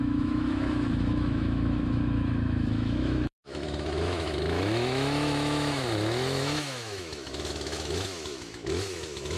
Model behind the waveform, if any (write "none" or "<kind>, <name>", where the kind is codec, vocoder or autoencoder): autoencoder, DAC-VAE